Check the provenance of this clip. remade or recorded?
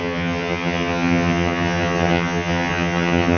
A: remade